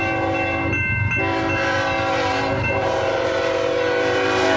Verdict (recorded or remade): remade